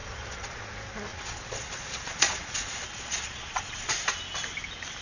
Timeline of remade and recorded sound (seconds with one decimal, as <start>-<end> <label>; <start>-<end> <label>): 0.0-0.6 remade; 0.6-1.1 recorded; 1.1-3.9 remade; 3.9-5.0 recorded